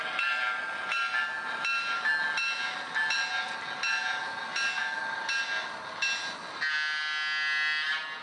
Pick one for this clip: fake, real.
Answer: real